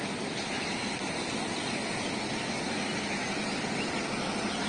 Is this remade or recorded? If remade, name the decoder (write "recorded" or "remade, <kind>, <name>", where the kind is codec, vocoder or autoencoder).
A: recorded